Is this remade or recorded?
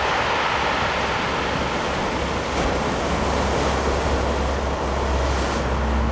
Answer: recorded